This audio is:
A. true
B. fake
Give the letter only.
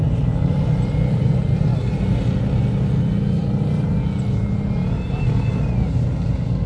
A